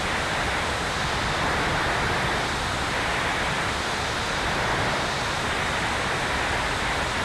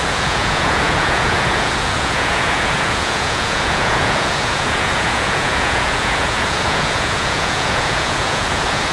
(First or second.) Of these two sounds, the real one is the first